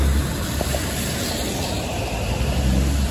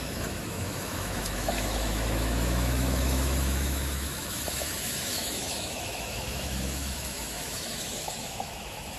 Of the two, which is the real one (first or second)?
first